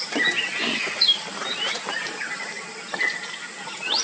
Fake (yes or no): no